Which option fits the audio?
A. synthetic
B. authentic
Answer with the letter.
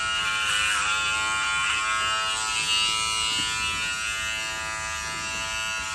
B